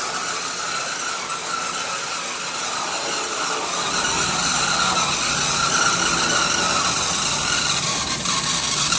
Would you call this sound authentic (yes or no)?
yes